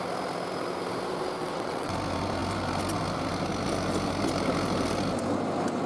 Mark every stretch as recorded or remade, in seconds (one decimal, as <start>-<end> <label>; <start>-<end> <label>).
0.0-1.4 recorded; 1.4-1.9 remade; 1.9-5.9 recorded